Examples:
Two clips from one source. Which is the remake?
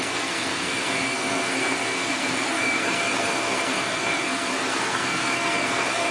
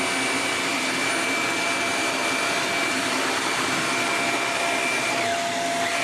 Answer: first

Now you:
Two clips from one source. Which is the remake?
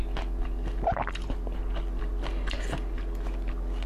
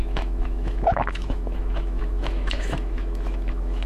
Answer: second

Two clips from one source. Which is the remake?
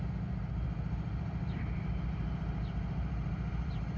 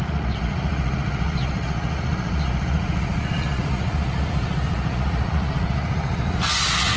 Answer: second